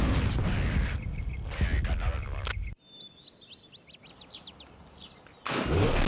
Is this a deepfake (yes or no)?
no